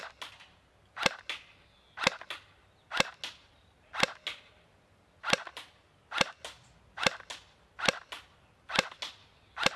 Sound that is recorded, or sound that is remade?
recorded